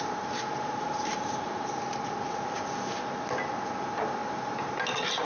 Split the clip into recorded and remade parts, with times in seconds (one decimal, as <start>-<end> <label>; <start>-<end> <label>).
0.0-5.2 recorded